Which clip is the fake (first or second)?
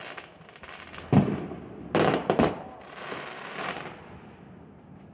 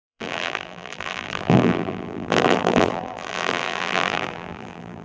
second